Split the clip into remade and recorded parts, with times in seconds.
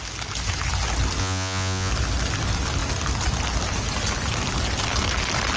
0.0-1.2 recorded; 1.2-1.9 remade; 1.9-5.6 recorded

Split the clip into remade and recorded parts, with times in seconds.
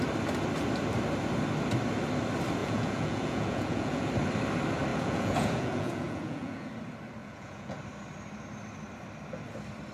0.0-2.6 recorded; 2.6-4.1 remade; 4.1-4.9 recorded; 4.9-6.7 remade; 6.7-7.2 recorded; 7.2-7.8 remade; 7.8-9.9 recorded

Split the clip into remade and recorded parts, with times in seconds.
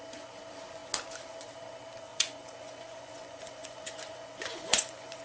0.0-2.1 recorded; 2.1-5.2 remade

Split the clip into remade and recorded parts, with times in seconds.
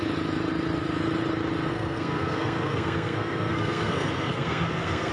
0.0-1.7 recorded; 1.7-5.1 remade